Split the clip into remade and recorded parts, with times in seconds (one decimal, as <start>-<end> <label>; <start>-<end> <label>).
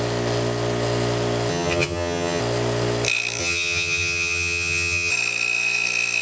0.0-1.5 recorded; 1.5-2.4 remade; 2.4-3.4 recorded; 3.4-5.1 remade; 5.1-6.2 recorded